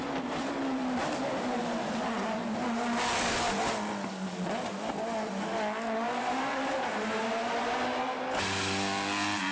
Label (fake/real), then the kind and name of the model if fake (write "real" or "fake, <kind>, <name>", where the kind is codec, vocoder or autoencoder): real